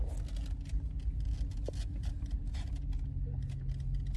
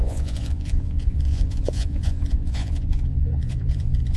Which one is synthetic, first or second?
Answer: second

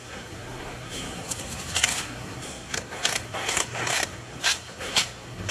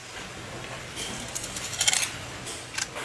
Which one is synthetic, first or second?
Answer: first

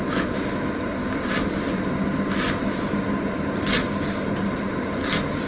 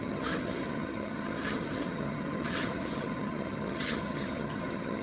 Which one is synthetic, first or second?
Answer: second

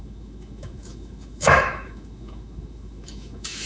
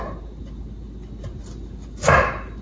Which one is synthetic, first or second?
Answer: first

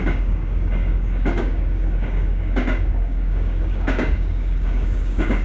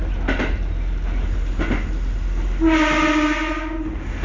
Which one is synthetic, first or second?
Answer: first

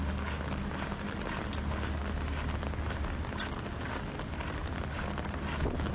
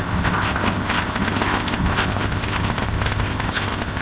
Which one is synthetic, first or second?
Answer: second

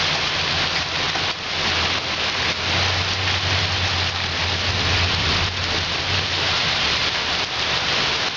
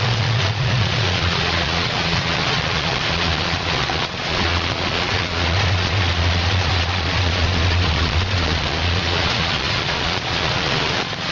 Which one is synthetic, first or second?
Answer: second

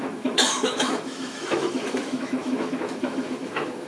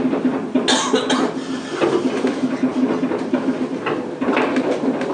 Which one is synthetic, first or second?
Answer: first